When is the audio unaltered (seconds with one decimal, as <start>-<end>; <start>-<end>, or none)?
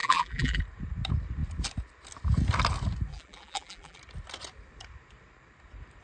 0.6-3.1; 4.0-6.0